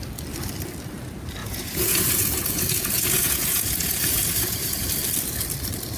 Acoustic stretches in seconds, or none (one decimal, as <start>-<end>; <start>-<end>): 0.0-1.4; 4.9-6.0